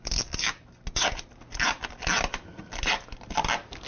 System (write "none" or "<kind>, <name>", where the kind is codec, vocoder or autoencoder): none